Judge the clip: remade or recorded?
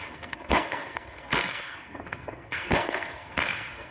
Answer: remade